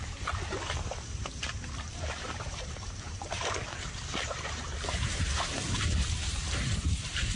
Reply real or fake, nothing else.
fake